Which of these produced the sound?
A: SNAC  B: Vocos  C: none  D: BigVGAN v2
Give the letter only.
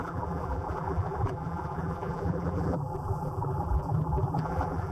D